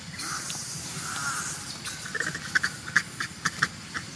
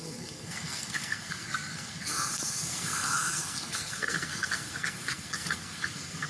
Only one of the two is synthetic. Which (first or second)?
second